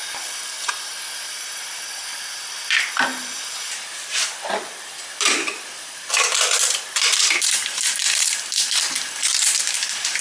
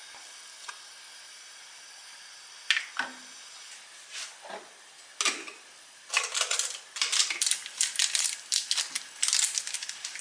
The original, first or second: second